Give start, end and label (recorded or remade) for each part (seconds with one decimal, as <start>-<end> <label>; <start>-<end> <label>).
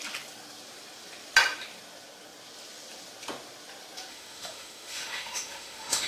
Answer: 0.0-4.1 recorded; 4.1-6.1 remade